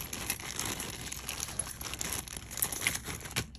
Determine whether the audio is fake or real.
real